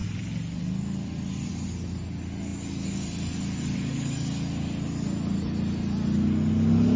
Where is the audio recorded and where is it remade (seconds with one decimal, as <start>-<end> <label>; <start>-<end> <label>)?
0.0-7.0 recorded